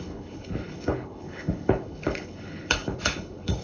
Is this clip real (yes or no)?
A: no